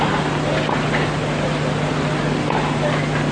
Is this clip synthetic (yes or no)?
no